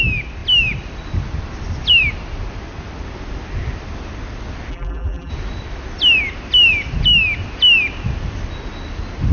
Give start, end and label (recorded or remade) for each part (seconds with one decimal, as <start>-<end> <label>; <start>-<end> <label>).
0.0-4.7 recorded; 4.7-5.3 remade; 5.3-9.3 recorded